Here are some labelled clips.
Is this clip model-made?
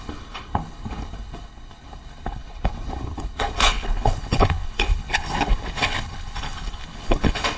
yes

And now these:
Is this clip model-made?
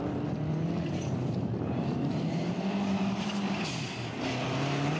no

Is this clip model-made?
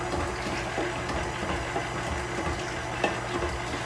no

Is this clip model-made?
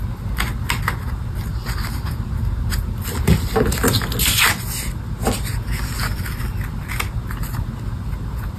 no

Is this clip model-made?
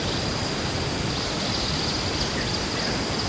no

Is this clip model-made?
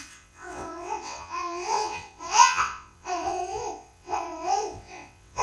yes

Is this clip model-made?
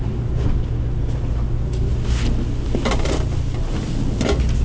no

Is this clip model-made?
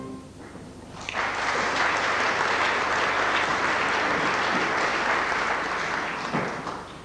no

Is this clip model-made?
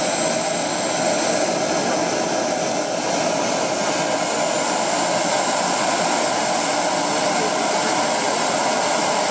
no